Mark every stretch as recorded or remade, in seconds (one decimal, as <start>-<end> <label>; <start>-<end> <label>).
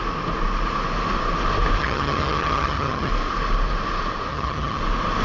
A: 0.0-1.8 recorded; 1.8-3.1 remade; 3.1-4.3 recorded; 4.3-4.8 remade; 4.8-5.2 recorded